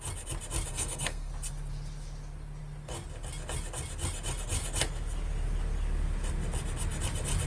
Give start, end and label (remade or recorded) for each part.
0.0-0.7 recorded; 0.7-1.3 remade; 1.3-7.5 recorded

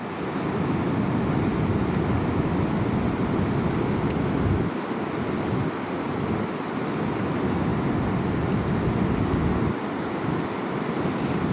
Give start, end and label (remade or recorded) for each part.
0.0-11.5 recorded

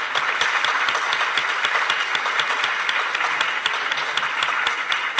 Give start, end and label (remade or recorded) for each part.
0.0-5.2 recorded

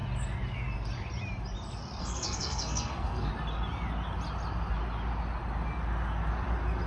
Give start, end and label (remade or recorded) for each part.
0.0-2.0 recorded; 2.0-3.3 remade; 3.3-6.9 recorded

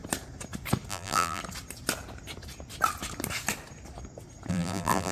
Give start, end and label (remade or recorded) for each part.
0.0-0.9 recorded; 0.9-1.4 remade; 1.4-4.5 recorded; 4.5-5.1 remade

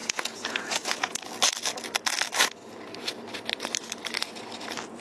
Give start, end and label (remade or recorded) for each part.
0.0-1.2 remade; 1.2-5.0 recorded

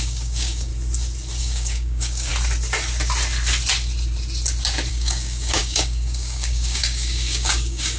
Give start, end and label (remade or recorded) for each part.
0.0-0.7 remade; 0.7-1.4 recorded; 1.4-2.3 remade; 2.3-4.9 recorded; 4.9-8.0 remade

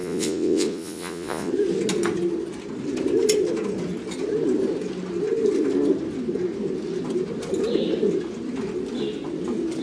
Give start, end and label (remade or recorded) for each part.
0.0-1.5 remade; 1.5-9.8 recorded